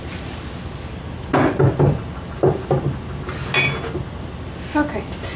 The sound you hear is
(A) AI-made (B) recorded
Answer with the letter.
B